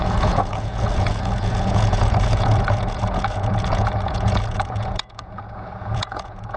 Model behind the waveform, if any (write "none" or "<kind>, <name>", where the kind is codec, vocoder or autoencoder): vocoder, Vocos